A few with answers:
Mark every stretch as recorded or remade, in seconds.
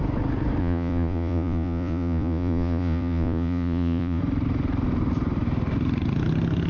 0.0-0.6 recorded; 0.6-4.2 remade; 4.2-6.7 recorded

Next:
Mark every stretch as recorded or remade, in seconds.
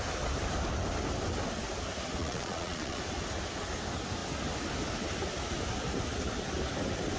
0.0-2.2 recorded; 2.2-3.0 remade; 3.0-7.2 recorded